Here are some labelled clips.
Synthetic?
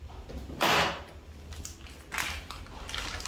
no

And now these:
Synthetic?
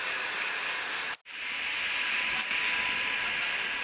yes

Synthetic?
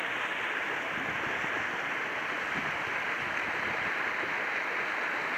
no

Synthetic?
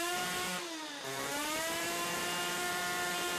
yes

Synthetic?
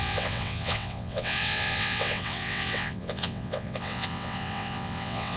yes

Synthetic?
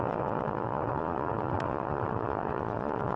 yes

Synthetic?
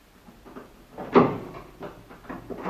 no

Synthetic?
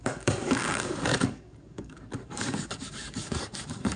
yes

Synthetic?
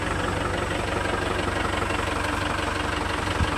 no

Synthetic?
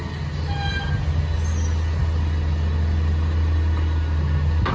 no